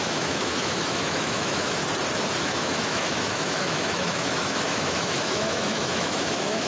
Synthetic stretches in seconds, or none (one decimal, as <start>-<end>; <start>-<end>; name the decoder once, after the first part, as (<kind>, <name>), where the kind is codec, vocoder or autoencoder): 0.0-1.8 (autoencoder, DAC-VAE); 2.4-6.7